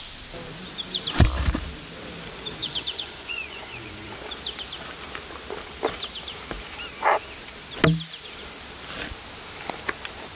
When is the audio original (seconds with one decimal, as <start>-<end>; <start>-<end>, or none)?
0.0-2.6; 4.1-10.3